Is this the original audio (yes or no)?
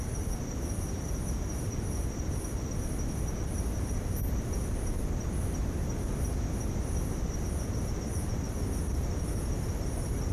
yes